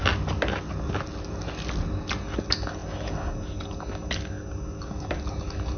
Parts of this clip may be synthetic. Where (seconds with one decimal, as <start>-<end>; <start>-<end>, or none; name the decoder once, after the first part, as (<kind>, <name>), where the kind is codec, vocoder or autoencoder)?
none